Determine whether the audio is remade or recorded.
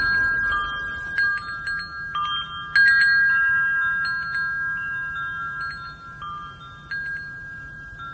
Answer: recorded